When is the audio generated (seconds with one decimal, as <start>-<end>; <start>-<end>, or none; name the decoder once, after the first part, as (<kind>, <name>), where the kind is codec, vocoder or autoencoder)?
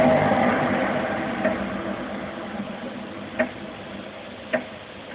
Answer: none